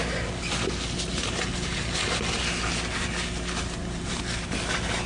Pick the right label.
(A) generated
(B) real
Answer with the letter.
B